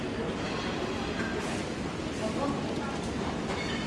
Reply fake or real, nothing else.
real